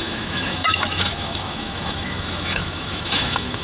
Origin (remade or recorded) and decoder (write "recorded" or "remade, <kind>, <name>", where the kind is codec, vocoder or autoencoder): remade, autoencoder, DAC-VAE